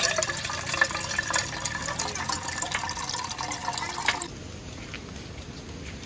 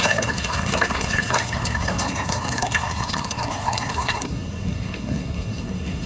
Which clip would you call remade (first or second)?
second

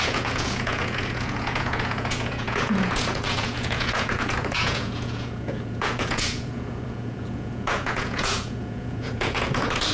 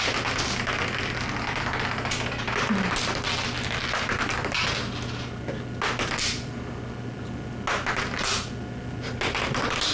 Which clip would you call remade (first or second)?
first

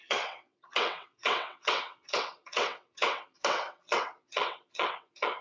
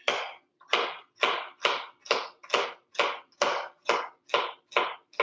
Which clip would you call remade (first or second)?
first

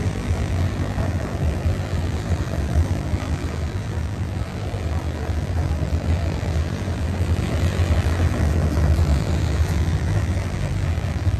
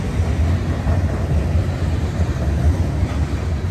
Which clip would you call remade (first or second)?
first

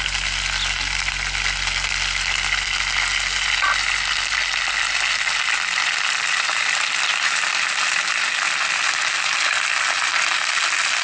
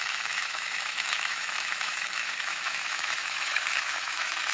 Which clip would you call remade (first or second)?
second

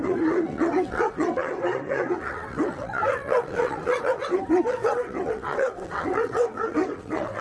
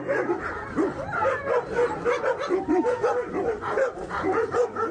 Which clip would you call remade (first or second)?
first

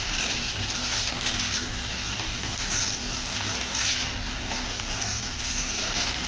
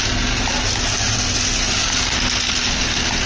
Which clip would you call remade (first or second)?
first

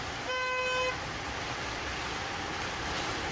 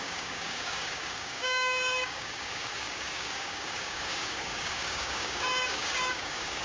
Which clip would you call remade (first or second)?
second